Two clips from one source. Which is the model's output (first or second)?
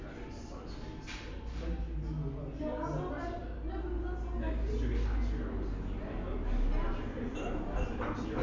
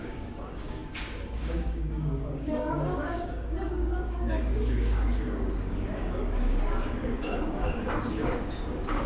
second